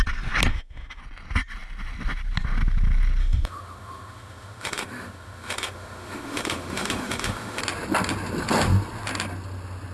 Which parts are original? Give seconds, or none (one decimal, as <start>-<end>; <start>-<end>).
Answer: 0.0-0.5; 1.0-3.2; 7.6-9.9